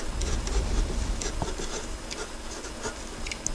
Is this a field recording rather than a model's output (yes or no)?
yes